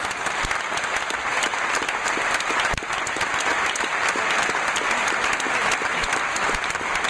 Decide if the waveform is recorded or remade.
recorded